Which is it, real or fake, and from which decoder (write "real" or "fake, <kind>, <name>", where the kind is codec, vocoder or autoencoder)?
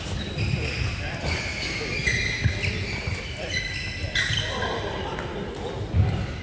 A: real